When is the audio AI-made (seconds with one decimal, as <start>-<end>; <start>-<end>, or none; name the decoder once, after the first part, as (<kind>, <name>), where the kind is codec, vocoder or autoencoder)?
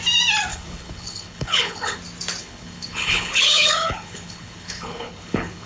0.5-2.0 (codec, HILCodec); 2.4-5.7